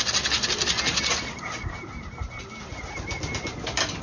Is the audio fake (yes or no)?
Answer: no